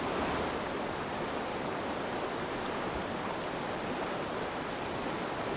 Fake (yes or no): no